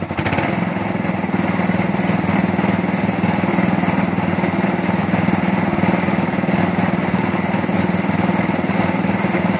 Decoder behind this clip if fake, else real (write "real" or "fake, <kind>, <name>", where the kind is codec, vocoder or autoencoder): real